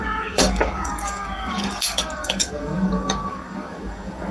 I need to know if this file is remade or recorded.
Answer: remade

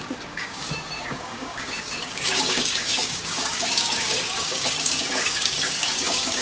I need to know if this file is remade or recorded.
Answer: remade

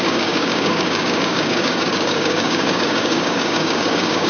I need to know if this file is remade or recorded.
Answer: remade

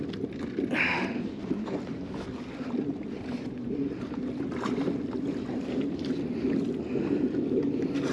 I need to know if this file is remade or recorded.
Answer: recorded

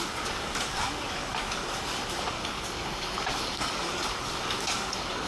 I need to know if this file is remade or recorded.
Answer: remade